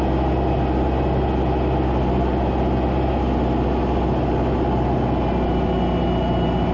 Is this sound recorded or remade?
recorded